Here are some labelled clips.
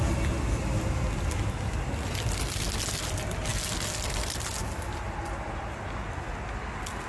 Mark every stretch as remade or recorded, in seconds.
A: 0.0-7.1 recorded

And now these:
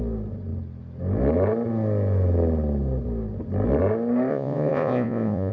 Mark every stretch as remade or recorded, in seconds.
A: 0.0-4.3 recorded; 4.3-5.5 remade

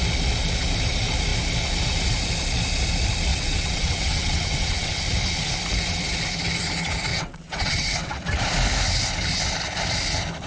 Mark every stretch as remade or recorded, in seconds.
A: 0.0-3.3 recorded; 3.3-5.0 remade; 5.0-7.1 recorded; 7.1-8.2 remade; 8.2-10.5 recorded

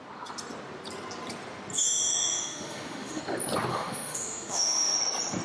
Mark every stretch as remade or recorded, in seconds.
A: 0.0-1.7 recorded; 1.7-3.2 remade; 3.2-3.7 recorded; 3.7-5.0 remade; 5.0-5.4 recorded